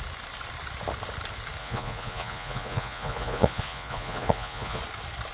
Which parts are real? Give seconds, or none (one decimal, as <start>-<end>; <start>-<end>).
0.0-1.6; 4.8-5.3